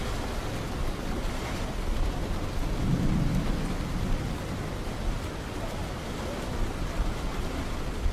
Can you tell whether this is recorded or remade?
recorded